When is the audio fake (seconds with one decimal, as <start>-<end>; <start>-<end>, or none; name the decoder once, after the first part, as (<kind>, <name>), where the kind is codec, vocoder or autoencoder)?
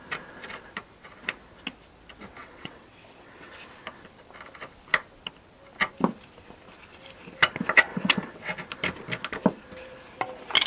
2.4-3.5 (vocoder, WaveNeXt); 7.9-8.5